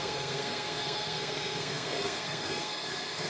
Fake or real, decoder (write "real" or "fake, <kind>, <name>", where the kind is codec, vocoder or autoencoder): fake, codec, SNAC